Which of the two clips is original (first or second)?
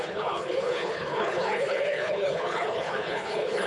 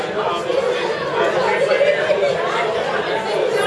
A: second